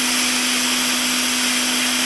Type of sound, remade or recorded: recorded